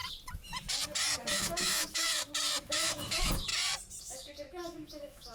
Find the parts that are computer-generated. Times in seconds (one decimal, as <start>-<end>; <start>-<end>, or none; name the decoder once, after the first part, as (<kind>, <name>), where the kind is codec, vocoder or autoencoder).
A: 1.3-2.1 (autoencoder, DAC-VAE); 2.6-3.5; 4.0-5.3